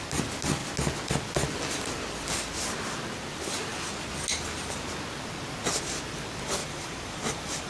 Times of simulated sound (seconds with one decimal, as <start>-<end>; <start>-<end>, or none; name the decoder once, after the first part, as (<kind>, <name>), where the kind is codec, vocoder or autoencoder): 6.6-7.7 (vocoder, BigVGAN v2)